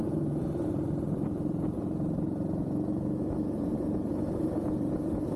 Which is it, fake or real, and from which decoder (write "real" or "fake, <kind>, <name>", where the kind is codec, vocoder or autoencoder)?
fake, vocoder, Vocos